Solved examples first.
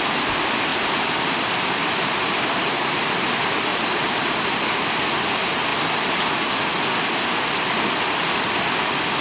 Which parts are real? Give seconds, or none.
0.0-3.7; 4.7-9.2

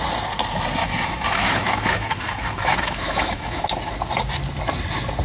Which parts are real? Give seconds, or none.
0.0-0.8; 3.6-5.2

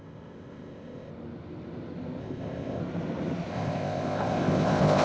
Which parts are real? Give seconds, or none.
1.1-2.2; 2.8-3.5

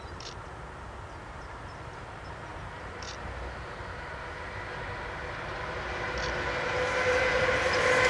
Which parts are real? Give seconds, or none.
0.0-8.1